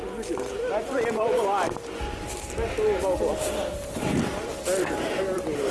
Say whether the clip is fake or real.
real